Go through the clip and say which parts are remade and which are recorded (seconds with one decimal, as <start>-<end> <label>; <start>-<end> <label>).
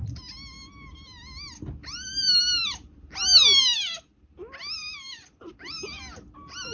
0.0-6.7 recorded